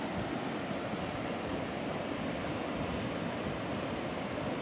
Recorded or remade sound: recorded